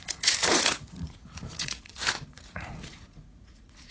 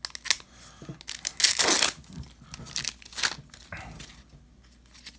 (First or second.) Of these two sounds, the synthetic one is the first